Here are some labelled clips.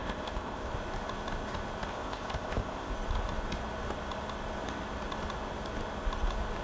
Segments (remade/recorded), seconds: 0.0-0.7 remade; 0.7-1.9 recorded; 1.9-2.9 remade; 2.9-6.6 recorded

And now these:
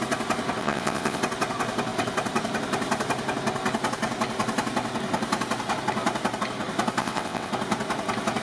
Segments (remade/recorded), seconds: 0.0-0.6 recorded; 0.6-1.2 remade; 1.2-7.0 recorded; 7.0-7.5 remade; 7.5-8.4 recorded

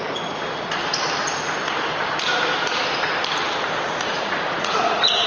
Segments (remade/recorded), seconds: 0.0-0.9 remade; 0.9-4.1 recorded; 4.1-5.3 remade